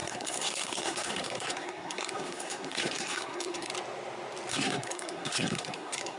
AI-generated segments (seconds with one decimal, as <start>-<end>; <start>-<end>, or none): 0.0-3.7; 4.5-6.2

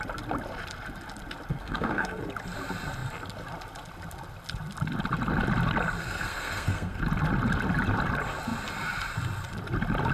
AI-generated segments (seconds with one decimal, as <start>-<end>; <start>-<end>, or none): 1.5-2.2; 6.0-7.0

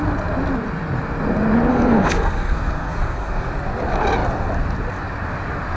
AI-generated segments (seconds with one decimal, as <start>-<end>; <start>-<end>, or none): 1.7-3.5

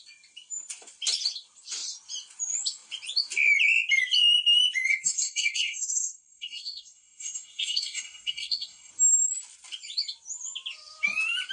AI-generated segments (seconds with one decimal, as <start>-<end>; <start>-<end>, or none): 4.9-8.9

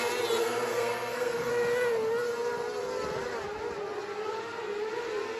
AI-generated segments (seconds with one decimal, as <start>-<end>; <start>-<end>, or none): 0.4-1.5

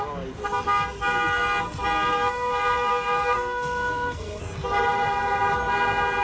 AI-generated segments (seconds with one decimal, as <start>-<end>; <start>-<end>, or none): 2.1-4.4

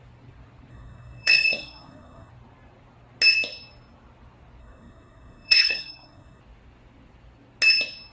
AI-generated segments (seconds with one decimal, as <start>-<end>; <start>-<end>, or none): 0.7-2.3; 4.6-6.4

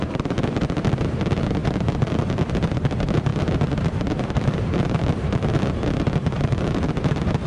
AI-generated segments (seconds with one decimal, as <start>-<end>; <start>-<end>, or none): none